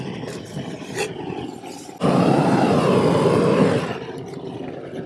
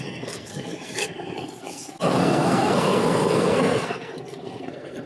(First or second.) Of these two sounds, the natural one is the first